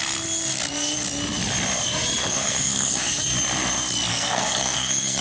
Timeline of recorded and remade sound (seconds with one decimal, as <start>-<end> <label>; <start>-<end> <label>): 0.0-2.2 recorded; 2.2-3.2 remade; 3.2-4.1 recorded; 4.1-5.2 remade